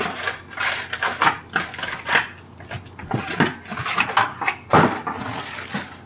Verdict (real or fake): real